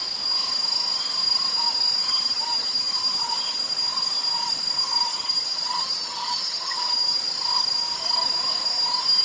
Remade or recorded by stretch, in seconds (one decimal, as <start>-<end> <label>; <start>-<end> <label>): 0.0-2.0 recorded; 2.0-3.6 remade; 3.6-5.1 recorded; 5.1-7.2 remade; 7.2-9.2 recorded